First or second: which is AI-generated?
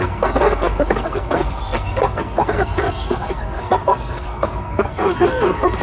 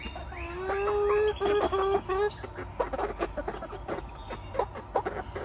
first